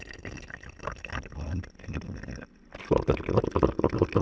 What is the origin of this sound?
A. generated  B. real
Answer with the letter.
B